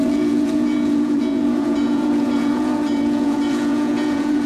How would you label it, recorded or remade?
remade